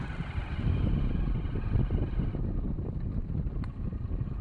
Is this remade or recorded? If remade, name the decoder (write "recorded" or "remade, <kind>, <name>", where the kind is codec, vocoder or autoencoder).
remade, vocoder, BigVGAN v2